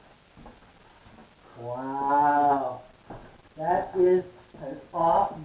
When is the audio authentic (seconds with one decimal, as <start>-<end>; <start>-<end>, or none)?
0.0-5.4